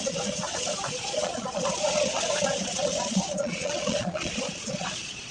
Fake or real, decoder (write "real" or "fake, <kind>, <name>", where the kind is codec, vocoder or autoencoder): fake, vocoder, Vocos